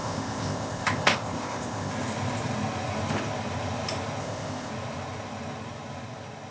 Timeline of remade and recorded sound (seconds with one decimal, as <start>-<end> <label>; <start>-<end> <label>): 0.0-1.9 remade; 1.9-4.2 recorded; 4.2-4.7 remade; 4.7-6.5 recorded